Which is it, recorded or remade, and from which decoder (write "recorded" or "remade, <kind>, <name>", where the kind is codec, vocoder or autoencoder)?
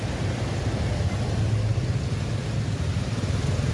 recorded